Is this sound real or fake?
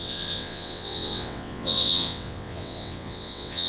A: fake